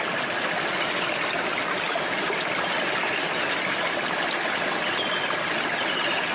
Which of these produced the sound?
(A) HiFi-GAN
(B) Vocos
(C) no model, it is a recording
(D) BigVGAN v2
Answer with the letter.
C